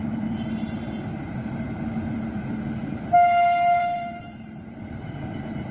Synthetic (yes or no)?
yes